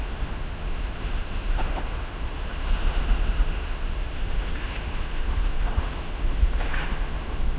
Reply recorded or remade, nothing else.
remade